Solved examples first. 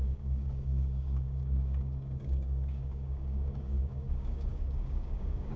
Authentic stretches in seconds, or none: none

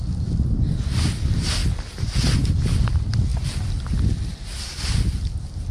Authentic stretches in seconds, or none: 0.0-5.7

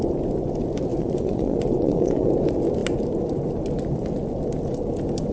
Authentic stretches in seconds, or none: 0.0-0.9; 2.3-5.3